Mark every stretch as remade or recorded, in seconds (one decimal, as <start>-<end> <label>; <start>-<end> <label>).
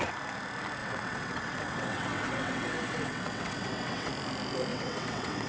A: 0.0-0.8 recorded; 0.8-4.1 remade; 4.1-4.7 recorded; 4.7-5.5 remade